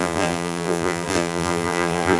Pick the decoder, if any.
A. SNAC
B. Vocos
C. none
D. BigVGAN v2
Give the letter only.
D